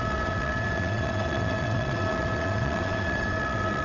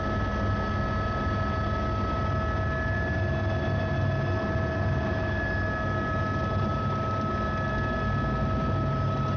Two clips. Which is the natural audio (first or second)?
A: second